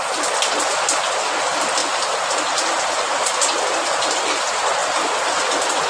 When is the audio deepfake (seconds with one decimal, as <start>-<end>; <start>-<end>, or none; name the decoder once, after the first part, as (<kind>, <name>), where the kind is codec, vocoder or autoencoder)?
1.8-2.4 (vocoder, BigVGAN v2)